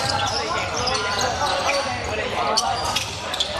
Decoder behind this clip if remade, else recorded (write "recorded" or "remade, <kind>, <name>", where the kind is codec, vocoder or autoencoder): recorded